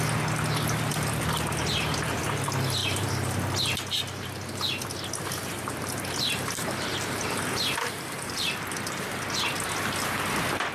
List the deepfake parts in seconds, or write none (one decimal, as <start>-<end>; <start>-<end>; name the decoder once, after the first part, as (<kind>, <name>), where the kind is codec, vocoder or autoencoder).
2.8-3.3 (vocoder, BigVGAN v2); 5.4-9.1